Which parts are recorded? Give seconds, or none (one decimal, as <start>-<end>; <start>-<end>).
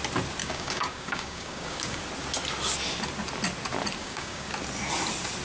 0.0-0.4; 2.0-4.0; 4.5-5.4